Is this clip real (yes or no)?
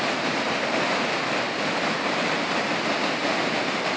yes